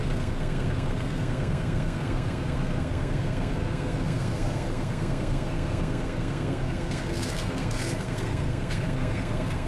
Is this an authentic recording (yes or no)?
no